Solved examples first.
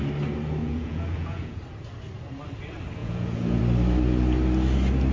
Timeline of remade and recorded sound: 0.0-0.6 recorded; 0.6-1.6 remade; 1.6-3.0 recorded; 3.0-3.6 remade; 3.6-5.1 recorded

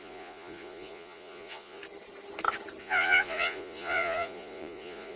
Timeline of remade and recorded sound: 0.0-1.8 remade; 1.8-2.8 recorded; 2.8-5.2 remade

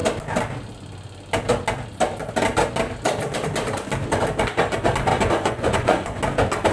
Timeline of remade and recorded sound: 0.0-5.1 recorded; 5.1-6.2 remade; 6.2-6.7 recorded